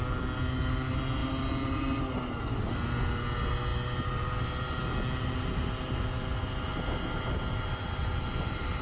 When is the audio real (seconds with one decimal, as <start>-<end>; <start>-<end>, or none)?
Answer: 0.0-8.8